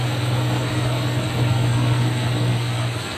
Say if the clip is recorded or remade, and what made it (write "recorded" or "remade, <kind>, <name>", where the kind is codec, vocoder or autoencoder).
remade, codec, SNAC